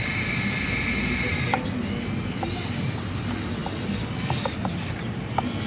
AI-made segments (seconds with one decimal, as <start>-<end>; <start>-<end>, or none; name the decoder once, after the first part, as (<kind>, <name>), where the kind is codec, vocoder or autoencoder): 0.0-3.6 (vocoder, BigVGAN v2); 5.2-5.7